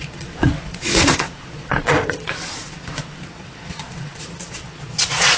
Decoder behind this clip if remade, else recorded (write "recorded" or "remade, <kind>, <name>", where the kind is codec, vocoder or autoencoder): remade, vocoder, Vocos